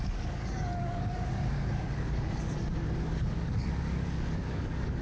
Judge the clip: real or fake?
fake